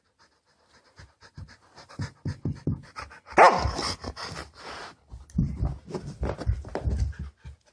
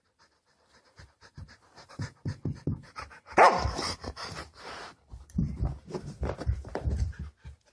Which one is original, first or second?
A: first